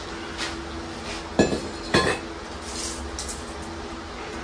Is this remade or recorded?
recorded